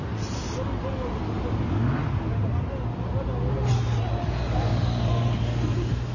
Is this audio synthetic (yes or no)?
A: no